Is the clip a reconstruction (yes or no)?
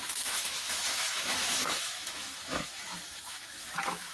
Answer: yes